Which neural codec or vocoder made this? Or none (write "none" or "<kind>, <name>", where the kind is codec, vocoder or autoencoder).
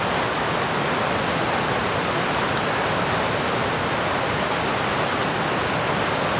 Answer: none